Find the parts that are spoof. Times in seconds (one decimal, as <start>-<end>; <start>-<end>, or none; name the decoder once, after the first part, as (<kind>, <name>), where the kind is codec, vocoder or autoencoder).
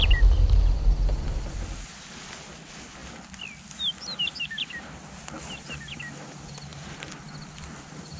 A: none